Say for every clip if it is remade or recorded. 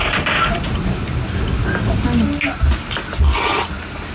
recorded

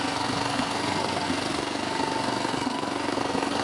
remade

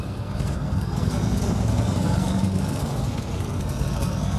remade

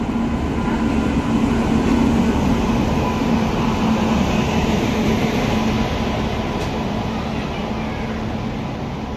recorded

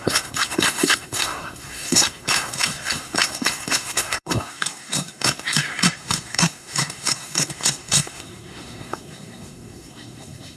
remade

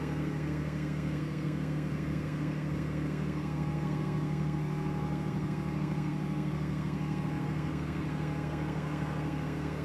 remade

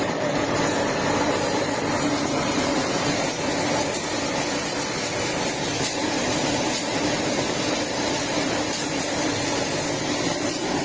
recorded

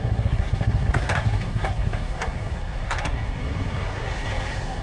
remade